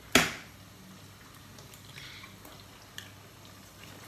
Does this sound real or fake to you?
real